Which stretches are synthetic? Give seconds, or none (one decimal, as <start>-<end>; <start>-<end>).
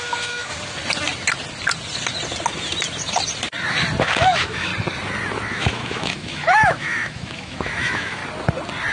0.0-0.5; 4.0-4.7; 5.5-8.2